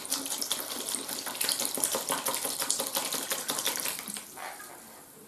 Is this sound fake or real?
fake